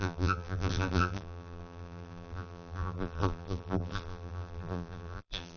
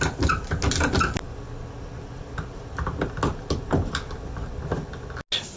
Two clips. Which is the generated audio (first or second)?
first